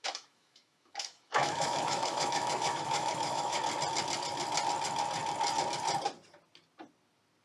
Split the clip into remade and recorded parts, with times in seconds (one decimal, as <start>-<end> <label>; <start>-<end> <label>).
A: 0.0-3.6 remade; 3.6-7.4 recorded